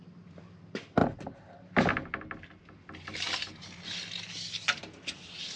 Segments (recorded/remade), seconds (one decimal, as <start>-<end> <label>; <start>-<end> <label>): 0.0-5.6 recorded